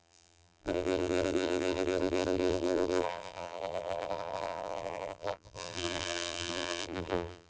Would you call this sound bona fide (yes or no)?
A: no